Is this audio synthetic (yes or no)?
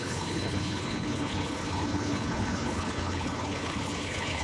yes